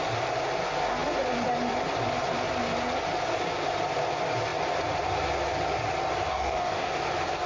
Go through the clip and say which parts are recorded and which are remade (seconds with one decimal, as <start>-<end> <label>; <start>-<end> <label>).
0.0-6.3 recorded; 6.3-6.9 remade; 6.9-7.5 recorded